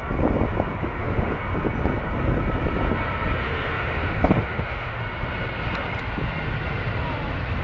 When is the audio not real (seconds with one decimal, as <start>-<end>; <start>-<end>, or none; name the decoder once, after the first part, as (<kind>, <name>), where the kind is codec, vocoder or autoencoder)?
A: 0.8-1.4 (autoencoder, DAC-VAE); 3.4-5.0